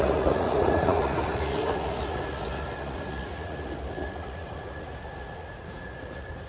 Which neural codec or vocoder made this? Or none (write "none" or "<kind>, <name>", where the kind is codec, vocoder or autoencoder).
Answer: vocoder, Vocos